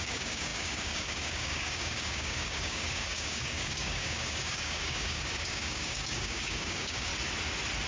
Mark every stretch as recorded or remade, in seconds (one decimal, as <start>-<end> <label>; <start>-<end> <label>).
0.0-7.1 remade; 7.1-7.9 recorded